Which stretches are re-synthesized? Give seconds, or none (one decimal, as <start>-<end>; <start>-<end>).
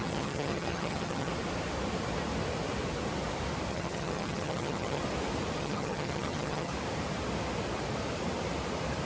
0.0-1.3; 3.7-5.0; 5.6-6.7